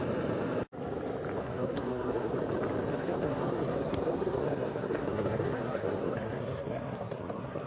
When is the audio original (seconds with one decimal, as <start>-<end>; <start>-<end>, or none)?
0.0-1.4; 2.3-2.9